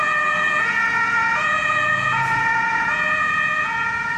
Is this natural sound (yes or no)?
no